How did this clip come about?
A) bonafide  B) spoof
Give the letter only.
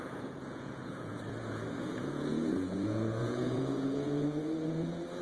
B